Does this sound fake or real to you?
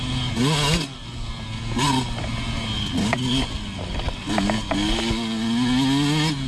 real